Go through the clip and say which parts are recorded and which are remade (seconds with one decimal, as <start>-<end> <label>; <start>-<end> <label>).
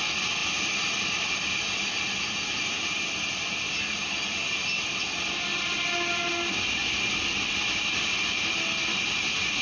0.0-9.6 recorded